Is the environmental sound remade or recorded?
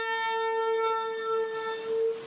recorded